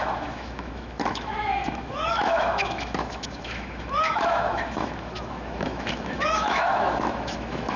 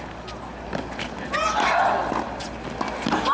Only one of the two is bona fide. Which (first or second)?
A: second